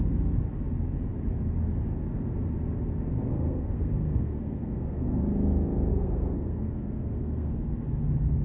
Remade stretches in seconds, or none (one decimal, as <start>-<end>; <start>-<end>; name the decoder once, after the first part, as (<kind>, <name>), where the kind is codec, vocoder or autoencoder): 3.3-5.2 (codec, SNAC); 5.9-7.7